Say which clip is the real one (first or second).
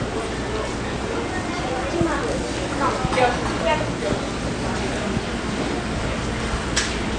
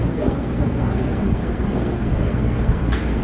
first